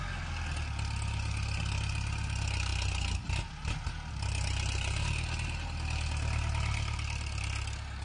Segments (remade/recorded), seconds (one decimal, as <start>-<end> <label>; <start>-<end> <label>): 0.0-8.0 recorded